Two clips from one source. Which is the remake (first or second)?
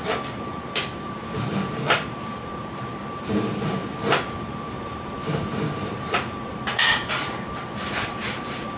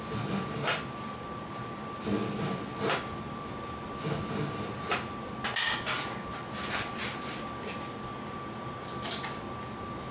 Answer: first